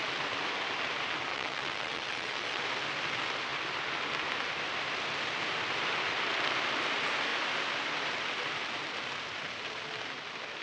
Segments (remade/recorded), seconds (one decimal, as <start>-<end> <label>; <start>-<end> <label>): 0.0-1.3 recorded; 1.3-2.6 remade; 2.6-10.6 recorded